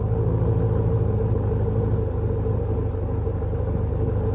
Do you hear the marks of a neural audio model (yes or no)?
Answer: no